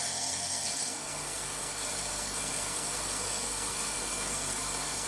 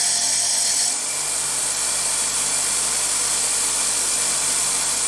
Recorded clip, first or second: second